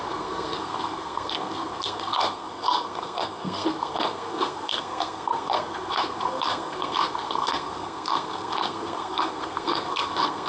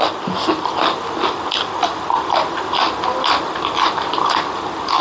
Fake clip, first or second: first